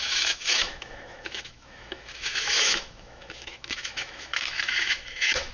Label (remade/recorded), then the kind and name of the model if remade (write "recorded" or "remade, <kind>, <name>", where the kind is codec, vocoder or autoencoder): remade, autoencoder, DAC-VAE